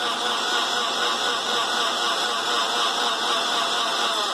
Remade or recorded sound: recorded